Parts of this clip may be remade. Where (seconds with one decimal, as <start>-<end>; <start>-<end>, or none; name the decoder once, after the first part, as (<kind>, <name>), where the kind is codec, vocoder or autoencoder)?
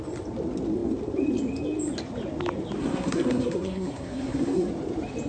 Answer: 2.8-4.7 (codec, SNAC)